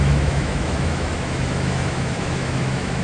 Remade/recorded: remade